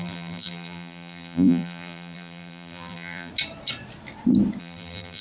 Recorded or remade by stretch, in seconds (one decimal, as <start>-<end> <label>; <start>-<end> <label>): 0.0-3.3 remade; 3.3-4.6 recorded; 4.6-5.2 remade